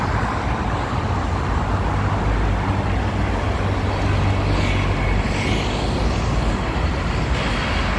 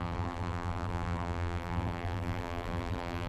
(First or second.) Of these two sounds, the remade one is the second